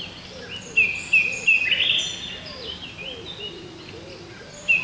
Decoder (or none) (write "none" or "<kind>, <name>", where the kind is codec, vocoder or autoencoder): none